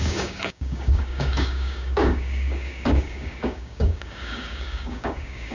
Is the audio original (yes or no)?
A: no